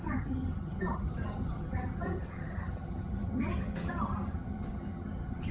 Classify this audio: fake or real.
fake